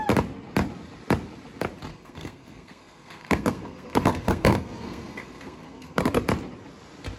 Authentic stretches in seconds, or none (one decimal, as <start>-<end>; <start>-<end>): 0.0-1.9; 6.2-7.2